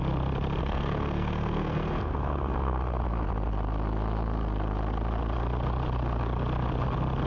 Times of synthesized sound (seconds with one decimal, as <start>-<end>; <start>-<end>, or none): 0.6-3.0